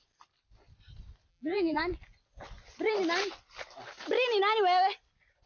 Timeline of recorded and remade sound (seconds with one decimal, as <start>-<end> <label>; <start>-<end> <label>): 0.0-1.3 recorded; 1.3-1.8 remade; 1.8-5.5 recorded

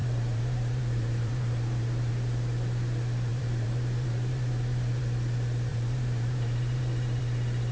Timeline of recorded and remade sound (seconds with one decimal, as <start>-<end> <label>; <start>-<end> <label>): 0.0-2.1 remade; 2.1-3.3 recorded; 3.3-5.0 remade; 5.0-5.7 recorded; 5.7-7.2 remade; 7.2-7.7 recorded

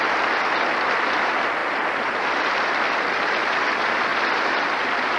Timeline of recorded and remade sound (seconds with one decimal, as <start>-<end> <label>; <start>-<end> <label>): 0.0-1.6 recorded; 1.6-3.3 remade; 3.3-5.2 recorded